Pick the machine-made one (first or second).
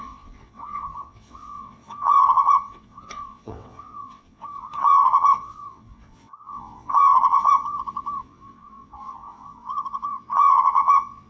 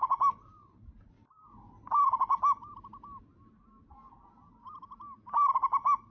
first